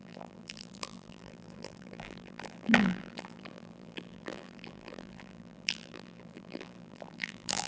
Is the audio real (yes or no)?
no